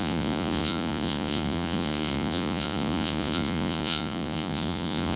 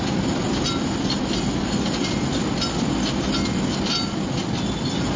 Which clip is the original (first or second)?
second